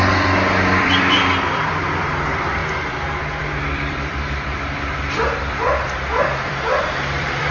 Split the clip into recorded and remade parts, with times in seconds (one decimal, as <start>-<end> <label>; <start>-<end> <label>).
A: 0.0-2.6 remade; 2.6-3.4 recorded; 3.4-7.5 remade

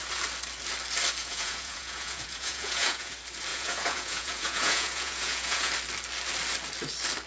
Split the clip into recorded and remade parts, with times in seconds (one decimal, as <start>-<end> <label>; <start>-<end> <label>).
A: 0.0-1.2 recorded; 1.2-3.1 remade; 3.1-3.5 recorded; 3.5-5.7 remade; 5.7-7.3 recorded

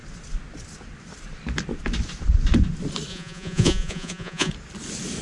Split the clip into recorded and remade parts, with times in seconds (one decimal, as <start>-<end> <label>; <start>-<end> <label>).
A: 0.0-3.1 recorded; 3.1-4.5 remade; 4.5-5.2 recorded